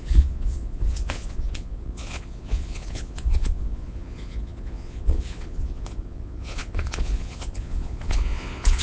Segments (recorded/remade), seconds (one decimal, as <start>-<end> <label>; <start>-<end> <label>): 0.0-8.8 remade